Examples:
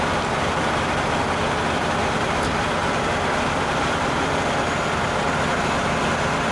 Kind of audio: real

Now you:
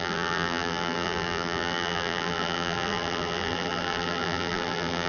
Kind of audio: fake